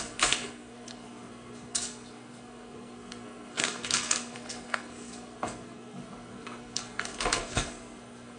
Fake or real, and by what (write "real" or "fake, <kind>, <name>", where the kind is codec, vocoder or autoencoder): fake, codec, SNAC